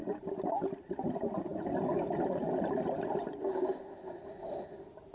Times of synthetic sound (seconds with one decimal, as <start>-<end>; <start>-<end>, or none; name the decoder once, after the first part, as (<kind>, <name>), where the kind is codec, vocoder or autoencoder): none